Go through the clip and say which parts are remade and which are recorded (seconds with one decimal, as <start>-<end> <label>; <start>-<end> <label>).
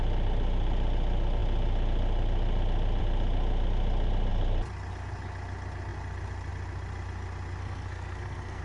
0.0-7.6 recorded; 7.6-8.6 remade